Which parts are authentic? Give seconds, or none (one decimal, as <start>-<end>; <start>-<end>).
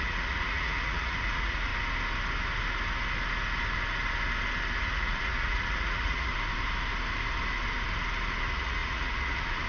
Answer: 1.7-4.8; 6.3-8.4